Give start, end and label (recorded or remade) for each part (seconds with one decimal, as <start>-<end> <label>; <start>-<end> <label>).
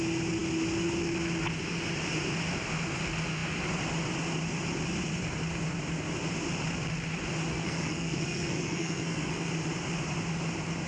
0.0-7.5 recorded; 7.5-9.5 remade; 9.5-10.9 recorded